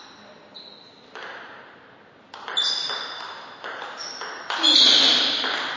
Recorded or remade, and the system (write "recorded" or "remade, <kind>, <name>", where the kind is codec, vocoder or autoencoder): recorded